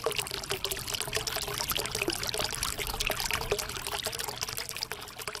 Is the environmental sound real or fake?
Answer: real